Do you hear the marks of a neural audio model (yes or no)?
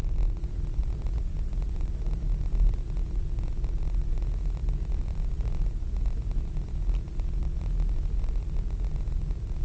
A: no